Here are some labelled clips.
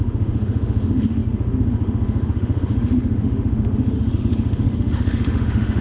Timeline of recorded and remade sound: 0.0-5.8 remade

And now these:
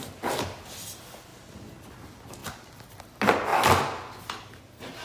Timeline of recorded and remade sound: 0.0-5.0 recorded

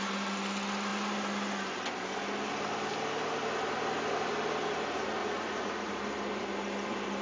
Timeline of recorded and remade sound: 0.0-5.2 recorded; 5.2-6.0 remade; 6.0-7.2 recorded

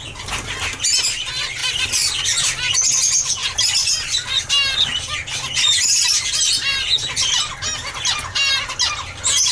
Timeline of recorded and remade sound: 0.0-1.6 recorded; 1.6-2.2 remade; 2.2-3.4 recorded; 3.4-4.5 remade; 4.5-9.5 recorded

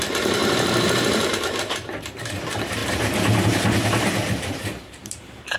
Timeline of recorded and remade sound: 0.0-2.8 remade; 2.8-3.4 recorded; 3.4-4.2 remade; 4.2-5.0 recorded; 5.0-5.6 remade